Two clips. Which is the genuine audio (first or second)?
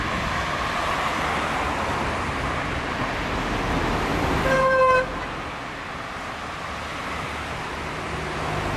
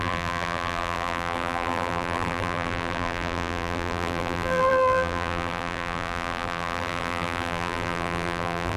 first